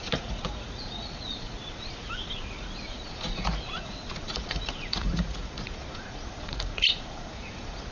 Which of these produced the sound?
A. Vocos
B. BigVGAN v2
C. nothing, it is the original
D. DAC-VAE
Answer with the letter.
A